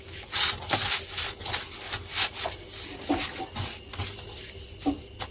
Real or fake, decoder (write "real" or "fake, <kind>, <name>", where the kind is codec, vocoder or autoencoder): real